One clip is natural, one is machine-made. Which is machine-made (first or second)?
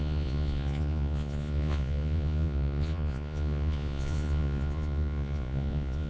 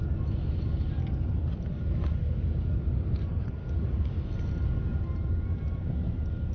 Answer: first